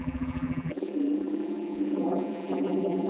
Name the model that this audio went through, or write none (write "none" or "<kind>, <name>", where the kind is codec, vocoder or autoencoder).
vocoder, BigVGAN v2